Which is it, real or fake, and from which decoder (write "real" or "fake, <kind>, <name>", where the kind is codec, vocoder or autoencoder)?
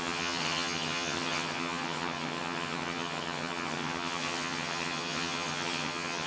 fake, vocoder, HiFi-GAN